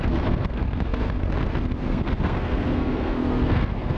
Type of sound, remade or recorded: remade